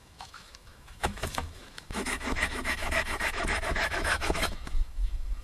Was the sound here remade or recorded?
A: remade